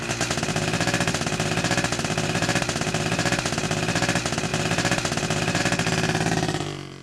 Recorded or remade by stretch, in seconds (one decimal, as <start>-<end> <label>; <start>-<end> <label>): 0.0-7.0 recorded